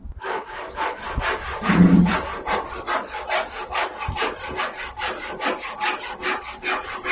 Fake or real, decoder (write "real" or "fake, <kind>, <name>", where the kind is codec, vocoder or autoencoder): real